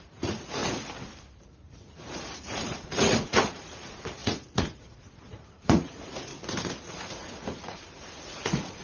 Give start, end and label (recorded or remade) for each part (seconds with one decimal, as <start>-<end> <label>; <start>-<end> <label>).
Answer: 0.0-0.6 remade; 0.6-1.8 recorded; 1.8-6.3 remade; 6.3-6.8 recorded; 6.8-8.8 remade